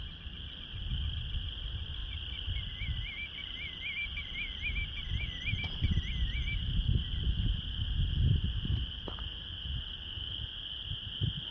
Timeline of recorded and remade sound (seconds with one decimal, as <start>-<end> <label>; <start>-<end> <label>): 0.0-11.5 recorded